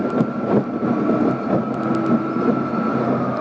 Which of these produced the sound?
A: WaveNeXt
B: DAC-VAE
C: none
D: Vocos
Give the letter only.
C